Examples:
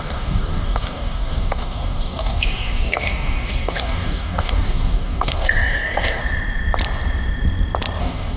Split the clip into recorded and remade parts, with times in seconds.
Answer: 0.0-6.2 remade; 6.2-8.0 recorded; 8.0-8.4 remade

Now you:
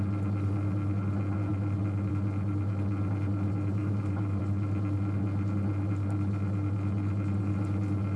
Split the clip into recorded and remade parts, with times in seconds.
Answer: 0.0-3.8 recorded; 3.8-4.4 remade; 4.4-8.2 recorded

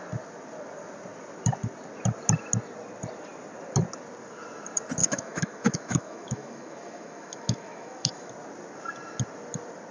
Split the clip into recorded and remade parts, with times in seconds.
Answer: 0.0-5.0 recorded; 5.0-8.3 remade; 8.3-9.9 recorded

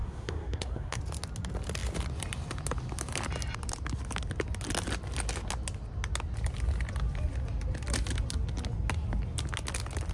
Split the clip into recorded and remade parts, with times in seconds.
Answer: 0.0-1.0 remade; 1.0-10.1 recorded

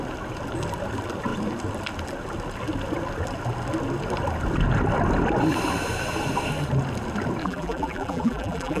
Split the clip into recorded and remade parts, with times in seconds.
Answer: 0.0-7.4 recorded; 7.4-8.8 remade

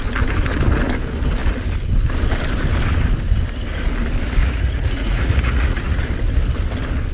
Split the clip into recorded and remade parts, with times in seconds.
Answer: 0.0-4.4 recorded; 4.4-6.0 remade; 6.0-7.1 recorded